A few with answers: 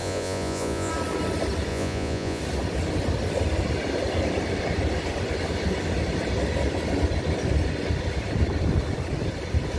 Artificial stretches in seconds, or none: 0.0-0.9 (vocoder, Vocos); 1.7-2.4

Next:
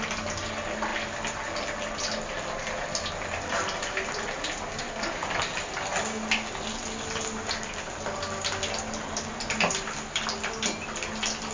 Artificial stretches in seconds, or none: none

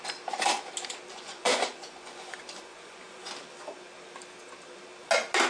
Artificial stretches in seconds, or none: 1.1-3.3 (vocoder, Vocos)

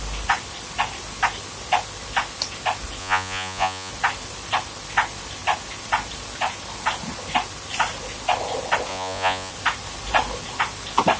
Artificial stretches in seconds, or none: 3.0-3.9 (vocoder, Vocos); 8.9-9.5

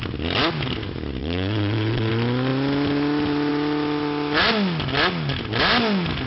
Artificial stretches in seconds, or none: 1.2-2.1 (vocoder, Vocos)

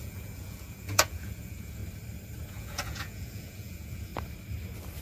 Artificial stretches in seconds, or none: 0.0-1.8 (vocoder, Vocos); 2.5-4.1